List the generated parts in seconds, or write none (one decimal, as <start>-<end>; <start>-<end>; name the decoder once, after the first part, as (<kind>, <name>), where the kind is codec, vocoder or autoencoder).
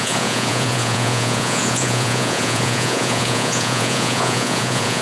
0.0-5.0 (vocoder, Vocos)